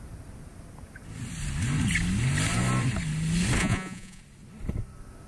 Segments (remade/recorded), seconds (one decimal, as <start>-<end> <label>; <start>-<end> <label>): 0.0-3.6 recorded; 3.6-4.2 remade; 4.2-5.3 recorded